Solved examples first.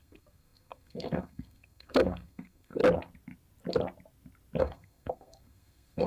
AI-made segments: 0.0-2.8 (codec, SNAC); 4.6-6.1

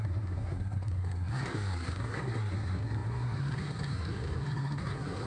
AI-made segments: 0.0-5.3 (codec, SNAC)